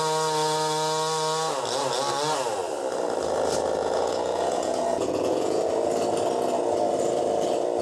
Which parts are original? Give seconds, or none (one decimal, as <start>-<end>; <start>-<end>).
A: 0.0-3.8; 5.6-7.8